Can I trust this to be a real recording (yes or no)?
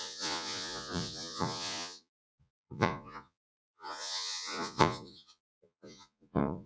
no